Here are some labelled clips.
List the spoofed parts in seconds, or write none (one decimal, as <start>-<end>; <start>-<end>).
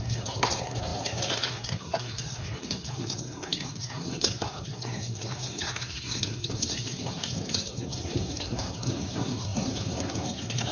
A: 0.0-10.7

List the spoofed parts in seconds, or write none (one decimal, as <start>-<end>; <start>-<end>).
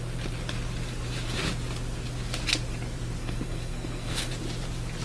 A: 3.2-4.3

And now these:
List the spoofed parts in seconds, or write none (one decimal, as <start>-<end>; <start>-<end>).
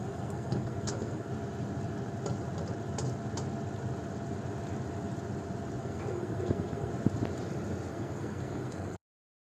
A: 0.0-1.3; 5.8-6.9; 7.9-9.6